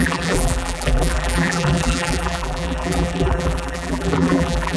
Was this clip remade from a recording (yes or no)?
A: yes